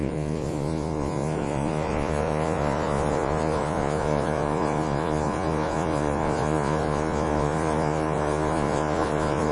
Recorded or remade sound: remade